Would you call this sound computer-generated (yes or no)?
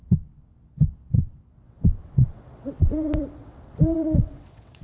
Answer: yes